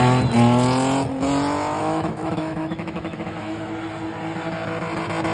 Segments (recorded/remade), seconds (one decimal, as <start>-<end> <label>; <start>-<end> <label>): 0.0-1.8 recorded; 1.8-3.7 remade; 3.7-5.3 recorded